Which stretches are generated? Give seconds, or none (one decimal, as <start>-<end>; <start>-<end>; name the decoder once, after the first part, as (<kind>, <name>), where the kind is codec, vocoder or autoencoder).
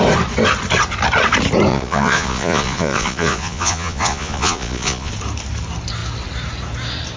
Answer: 1.7-5.1 (vocoder, Vocos)